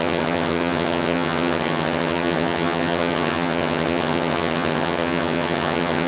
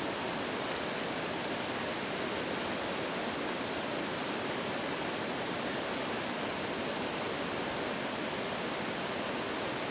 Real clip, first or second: second